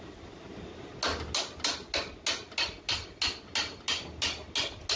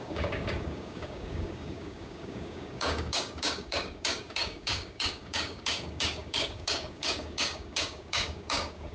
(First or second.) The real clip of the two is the first